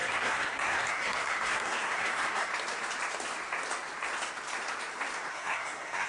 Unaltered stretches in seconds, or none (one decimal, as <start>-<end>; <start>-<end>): 2.5-5.3